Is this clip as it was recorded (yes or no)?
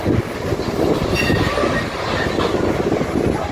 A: yes